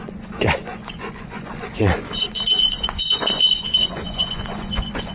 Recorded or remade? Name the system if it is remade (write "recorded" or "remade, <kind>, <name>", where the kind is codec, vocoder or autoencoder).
remade, vocoder, Vocos